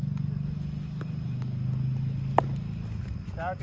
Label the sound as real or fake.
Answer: real